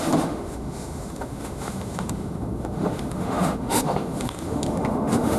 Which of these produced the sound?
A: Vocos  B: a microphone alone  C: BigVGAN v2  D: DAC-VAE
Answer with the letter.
D